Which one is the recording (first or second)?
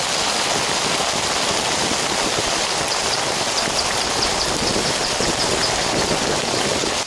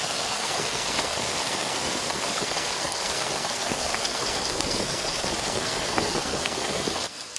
first